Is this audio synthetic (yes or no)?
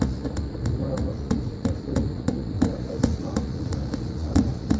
yes